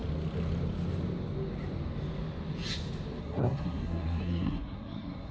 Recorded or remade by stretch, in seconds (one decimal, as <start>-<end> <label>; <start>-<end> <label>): 0.0-3.2 recorded; 3.2-5.3 remade